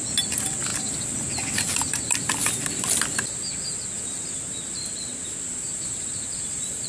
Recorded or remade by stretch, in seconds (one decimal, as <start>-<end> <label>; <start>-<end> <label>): 0.0-5.2 recorded; 5.2-6.9 remade